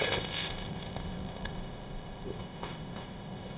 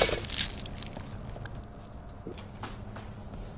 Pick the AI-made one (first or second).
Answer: first